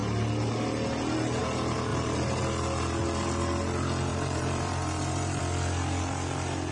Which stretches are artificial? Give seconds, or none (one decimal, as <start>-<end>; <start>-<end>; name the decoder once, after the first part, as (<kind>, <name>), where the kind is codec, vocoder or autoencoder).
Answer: 1.9-2.4 (vocoder, BigVGAN v2); 4.1-5.4